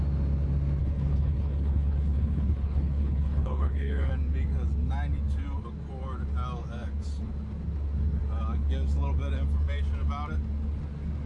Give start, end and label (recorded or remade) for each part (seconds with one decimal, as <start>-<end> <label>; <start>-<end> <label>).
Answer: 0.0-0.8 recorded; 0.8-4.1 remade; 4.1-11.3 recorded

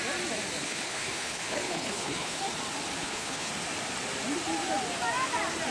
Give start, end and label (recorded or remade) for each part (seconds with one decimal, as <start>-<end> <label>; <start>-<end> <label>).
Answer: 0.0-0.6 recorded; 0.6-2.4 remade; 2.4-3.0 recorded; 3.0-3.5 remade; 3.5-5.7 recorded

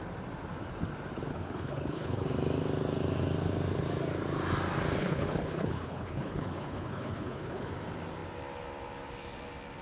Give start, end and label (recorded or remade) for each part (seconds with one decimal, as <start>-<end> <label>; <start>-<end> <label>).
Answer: 0.0-1.3 recorded; 1.3-2.3 remade; 2.3-5.0 recorded; 5.0-7.7 remade; 7.7-9.8 recorded